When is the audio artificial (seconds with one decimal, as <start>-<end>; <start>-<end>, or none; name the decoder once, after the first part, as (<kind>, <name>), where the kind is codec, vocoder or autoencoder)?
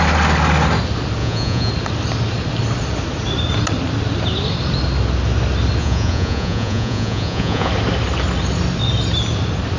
1.2-1.7 (vocoder, Vocos); 5.8-7.7